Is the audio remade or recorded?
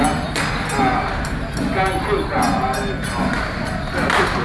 recorded